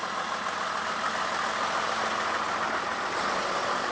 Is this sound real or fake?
real